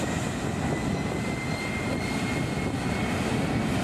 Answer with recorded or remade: recorded